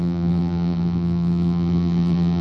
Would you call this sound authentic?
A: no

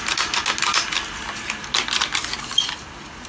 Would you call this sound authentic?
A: yes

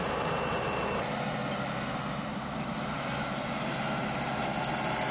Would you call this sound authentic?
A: yes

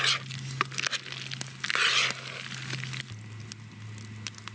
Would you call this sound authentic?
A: yes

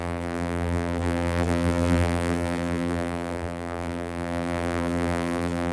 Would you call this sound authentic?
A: no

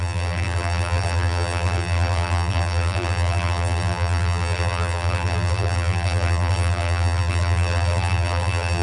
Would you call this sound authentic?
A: no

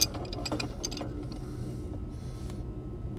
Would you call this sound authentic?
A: yes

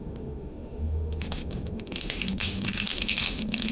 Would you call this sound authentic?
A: no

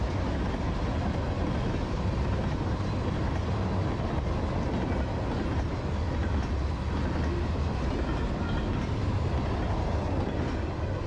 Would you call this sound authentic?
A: yes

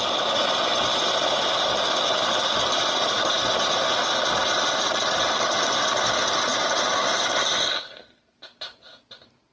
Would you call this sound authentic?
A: yes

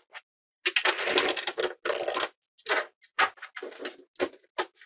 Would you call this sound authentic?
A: yes